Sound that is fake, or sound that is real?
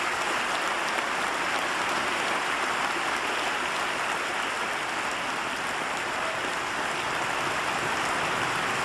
real